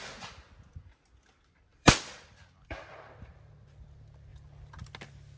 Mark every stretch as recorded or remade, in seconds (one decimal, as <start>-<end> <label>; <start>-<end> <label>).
0.0-0.5 remade; 0.5-1.7 recorded; 1.7-3.3 remade; 3.3-5.4 recorded